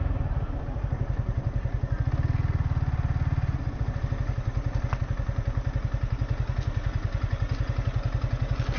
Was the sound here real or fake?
real